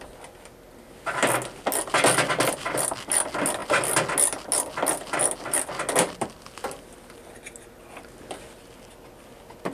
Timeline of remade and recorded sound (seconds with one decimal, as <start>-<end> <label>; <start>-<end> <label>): 0.0-9.7 recorded